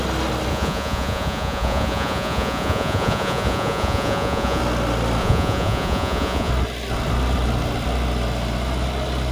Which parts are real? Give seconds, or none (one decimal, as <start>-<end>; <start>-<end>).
0.0-0.5; 4.6-5.2; 6.5-9.3